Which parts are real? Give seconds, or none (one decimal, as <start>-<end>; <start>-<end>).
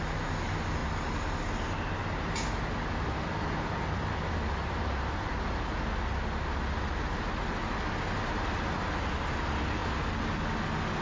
0.0-11.0